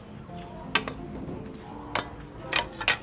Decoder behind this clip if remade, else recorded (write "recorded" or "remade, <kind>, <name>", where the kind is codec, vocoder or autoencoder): recorded